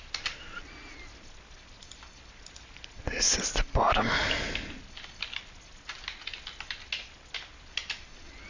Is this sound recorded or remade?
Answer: recorded